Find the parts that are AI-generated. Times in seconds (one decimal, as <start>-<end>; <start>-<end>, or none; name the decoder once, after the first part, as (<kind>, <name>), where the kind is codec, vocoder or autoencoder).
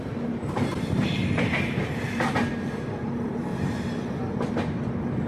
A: 0.0-0.7 (vocoder, BigVGAN v2); 2.5-3.5; 4.7-5.3